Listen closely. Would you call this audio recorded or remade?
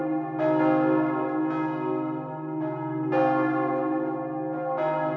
recorded